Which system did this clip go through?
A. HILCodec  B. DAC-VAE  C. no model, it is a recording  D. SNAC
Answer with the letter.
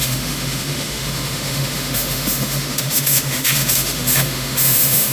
B